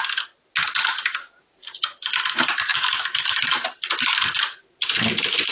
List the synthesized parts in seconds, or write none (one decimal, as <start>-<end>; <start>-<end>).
2.7-4.8

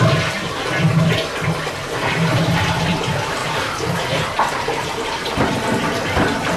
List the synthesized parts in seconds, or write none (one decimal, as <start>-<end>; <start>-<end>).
1.8-2.6; 3.4-5.6

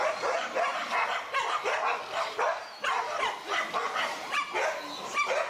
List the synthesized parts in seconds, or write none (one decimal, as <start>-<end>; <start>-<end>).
none

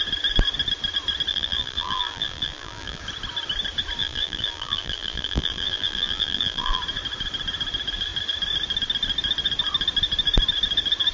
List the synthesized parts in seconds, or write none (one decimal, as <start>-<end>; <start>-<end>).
1.3-3.0; 4.0-6.8

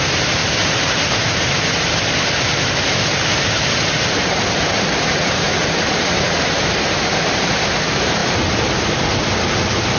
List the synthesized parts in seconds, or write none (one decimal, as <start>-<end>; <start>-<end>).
0.0-8.2

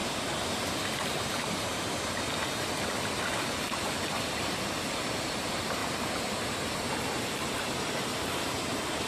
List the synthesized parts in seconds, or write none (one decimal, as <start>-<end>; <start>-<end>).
0.7-1.7; 3.7-5.8; 7.2-9.1

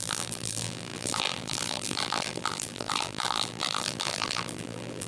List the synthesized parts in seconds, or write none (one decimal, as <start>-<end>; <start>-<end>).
0.0-5.1